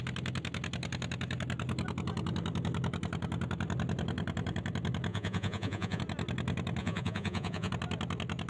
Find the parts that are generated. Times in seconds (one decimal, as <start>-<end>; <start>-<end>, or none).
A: 5.1-6.0; 6.8-7.7

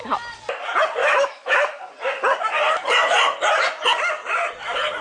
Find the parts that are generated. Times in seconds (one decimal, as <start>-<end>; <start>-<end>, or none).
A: 1.0-1.8

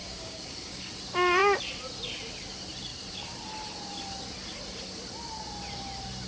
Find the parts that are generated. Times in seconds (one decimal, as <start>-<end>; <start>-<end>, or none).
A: 0.0-0.8

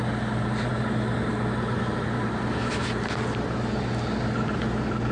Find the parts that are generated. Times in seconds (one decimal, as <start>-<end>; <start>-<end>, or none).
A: none

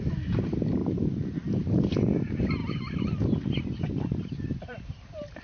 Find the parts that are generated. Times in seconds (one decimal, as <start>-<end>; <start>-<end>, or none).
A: 0.8-2.2; 2.6-5.4

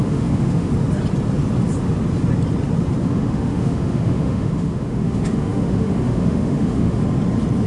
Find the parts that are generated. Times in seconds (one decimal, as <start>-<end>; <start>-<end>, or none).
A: 0.0-0.7; 3.0-7.0

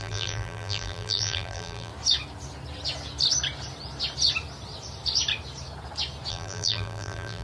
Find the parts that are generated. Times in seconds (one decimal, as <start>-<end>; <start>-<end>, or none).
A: 0.0-1.9; 6.3-7.4

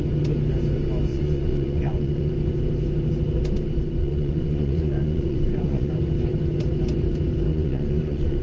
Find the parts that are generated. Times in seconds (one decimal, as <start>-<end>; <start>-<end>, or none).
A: 1.1-2.3; 4.0-5.9; 7.5-8.4